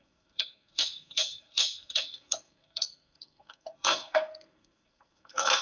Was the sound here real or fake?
fake